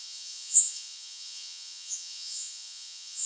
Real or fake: fake